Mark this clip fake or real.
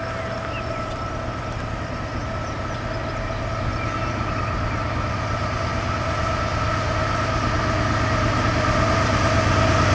real